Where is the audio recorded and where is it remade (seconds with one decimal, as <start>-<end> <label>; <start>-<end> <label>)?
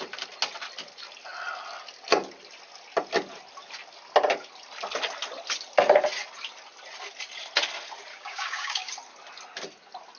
0.0-8.1 recorded; 8.1-8.9 remade; 8.9-10.2 recorded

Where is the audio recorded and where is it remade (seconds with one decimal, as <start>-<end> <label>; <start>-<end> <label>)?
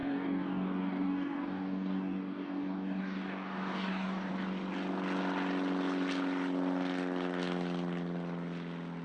0.0-4.3 remade; 4.3-9.0 recorded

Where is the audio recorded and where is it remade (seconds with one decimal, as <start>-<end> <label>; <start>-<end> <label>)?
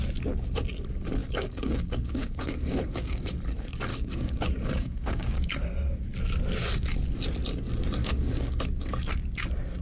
0.0-1.2 recorded; 1.2-3.4 remade; 3.4-3.9 recorded; 3.9-5.5 remade; 5.5-8.0 recorded; 8.0-8.6 remade; 8.6-9.8 recorded